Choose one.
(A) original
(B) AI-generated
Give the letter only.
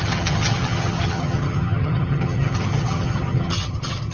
B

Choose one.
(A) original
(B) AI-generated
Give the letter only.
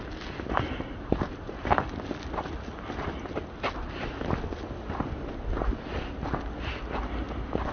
A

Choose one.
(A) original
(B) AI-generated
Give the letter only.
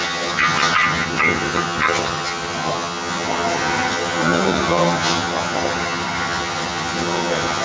B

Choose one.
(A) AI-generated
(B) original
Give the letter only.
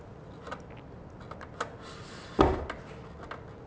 B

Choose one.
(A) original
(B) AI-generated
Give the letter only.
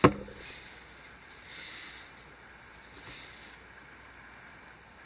A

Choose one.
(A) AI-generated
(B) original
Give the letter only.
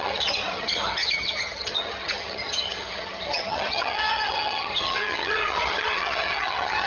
A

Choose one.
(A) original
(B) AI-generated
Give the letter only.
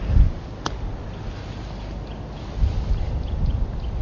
A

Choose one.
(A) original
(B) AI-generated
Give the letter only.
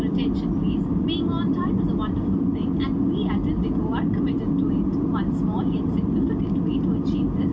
A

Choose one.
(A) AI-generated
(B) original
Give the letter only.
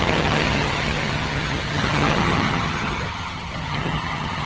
A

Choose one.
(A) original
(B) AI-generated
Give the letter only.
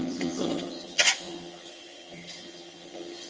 B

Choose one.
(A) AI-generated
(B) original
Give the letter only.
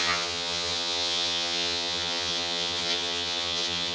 A